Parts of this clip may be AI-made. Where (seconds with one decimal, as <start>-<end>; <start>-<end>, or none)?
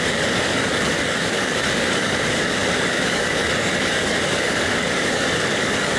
0.0-6.0